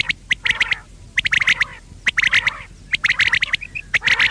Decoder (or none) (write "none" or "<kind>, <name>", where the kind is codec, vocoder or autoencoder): none